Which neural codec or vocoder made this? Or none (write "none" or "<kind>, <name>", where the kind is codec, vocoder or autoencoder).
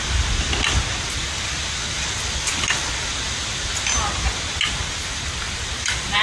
none